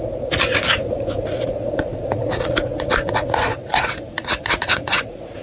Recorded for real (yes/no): no